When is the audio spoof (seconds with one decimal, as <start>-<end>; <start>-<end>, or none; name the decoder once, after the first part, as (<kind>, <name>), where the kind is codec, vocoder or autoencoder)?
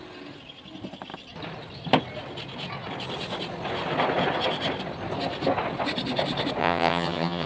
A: 6.6-7.5 (vocoder, HiFi-GAN)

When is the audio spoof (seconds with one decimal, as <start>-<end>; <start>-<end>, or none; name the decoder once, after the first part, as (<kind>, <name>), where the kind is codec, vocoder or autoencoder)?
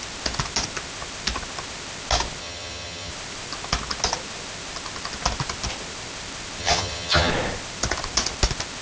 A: 2.4-3.1 (vocoder, HiFi-GAN); 6.6-7.3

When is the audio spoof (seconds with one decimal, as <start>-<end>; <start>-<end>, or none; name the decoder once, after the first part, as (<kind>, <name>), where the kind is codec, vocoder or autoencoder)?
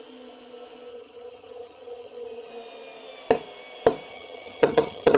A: 0.9-2.5 (vocoder, HiFi-GAN); 4.1-5.2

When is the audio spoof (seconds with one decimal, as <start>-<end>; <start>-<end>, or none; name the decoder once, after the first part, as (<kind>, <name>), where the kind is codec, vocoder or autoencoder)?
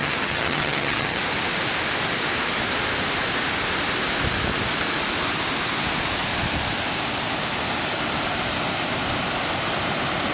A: 0.0-1.2 (vocoder, HiFi-GAN)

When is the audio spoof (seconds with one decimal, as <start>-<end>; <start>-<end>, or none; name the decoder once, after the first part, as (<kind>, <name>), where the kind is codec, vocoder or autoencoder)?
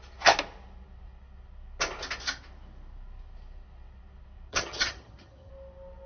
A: 4.5-5.5 (vocoder, HiFi-GAN)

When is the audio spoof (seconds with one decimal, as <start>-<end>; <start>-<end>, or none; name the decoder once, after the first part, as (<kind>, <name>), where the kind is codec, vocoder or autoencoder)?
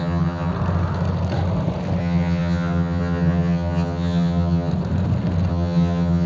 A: 0.0-0.5 (vocoder, HiFi-GAN); 2.0-4.7; 5.5-6.3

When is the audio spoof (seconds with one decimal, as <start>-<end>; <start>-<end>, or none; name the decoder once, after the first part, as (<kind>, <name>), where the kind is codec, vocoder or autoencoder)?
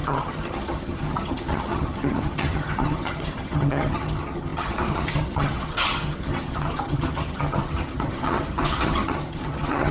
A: 0.0-9.9 (vocoder, HiFi-GAN)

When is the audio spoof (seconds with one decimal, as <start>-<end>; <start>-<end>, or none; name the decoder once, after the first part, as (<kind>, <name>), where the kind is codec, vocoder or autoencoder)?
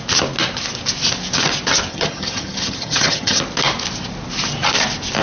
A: 1.9-3.4 (vocoder, HiFi-GAN)